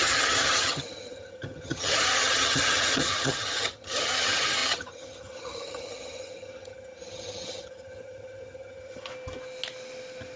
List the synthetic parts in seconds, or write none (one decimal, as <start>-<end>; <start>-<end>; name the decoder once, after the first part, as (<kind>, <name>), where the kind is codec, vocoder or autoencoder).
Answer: 0.0-9.1 (vocoder, HiFi-GAN)